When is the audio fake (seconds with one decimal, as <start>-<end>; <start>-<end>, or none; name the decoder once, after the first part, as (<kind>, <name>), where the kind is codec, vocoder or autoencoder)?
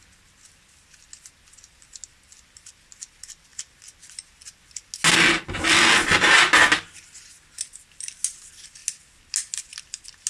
none